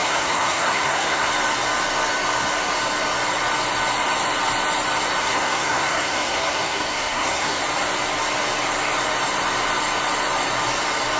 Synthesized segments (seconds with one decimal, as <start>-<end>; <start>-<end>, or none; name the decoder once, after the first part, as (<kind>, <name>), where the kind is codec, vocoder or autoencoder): 0.0-1.3 (codec, SNAC); 5.2-7.6